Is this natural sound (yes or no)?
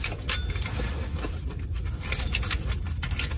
yes